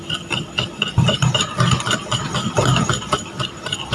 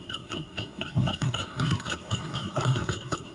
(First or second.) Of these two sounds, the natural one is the first